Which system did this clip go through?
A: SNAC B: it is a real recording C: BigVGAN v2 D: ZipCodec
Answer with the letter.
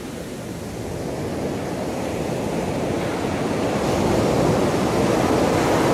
B